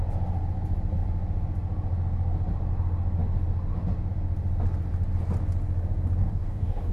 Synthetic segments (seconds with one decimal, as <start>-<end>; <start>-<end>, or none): 6.2-6.9